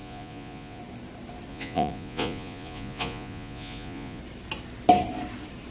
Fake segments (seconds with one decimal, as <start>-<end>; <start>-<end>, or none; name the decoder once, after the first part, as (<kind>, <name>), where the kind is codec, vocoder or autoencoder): 0.0-0.8 (vocoder, Vocos); 1.5-4.2